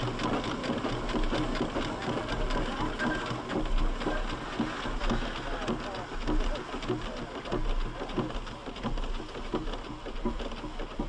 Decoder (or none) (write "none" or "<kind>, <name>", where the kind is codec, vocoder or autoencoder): none